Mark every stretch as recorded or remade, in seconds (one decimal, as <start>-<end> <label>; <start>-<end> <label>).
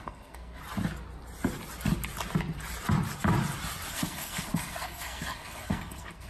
0.0-0.6 remade; 0.6-3.9 recorded; 3.9-6.3 remade